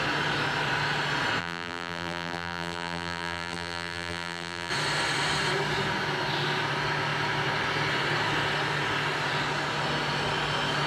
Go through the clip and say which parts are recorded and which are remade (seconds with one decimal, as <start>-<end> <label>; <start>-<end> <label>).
0.0-1.4 recorded; 1.4-4.7 remade; 4.7-10.9 recorded